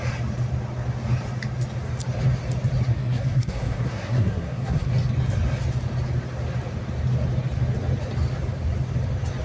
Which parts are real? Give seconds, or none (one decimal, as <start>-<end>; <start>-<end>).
0.0-2.9; 4.9-9.4